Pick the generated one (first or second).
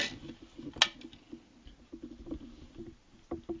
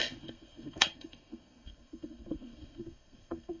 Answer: second